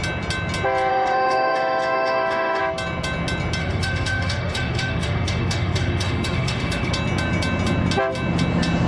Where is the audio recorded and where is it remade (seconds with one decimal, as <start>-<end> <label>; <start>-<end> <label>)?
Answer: 0.0-0.9 recorded; 0.9-2.6 remade; 2.6-3.6 recorded; 3.6-6.9 remade; 6.9-8.9 recorded